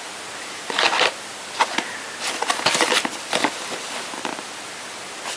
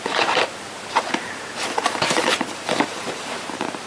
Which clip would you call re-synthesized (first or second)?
second